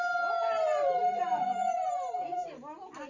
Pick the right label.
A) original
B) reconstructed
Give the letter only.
A